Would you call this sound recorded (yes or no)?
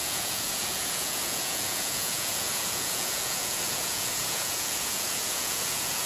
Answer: no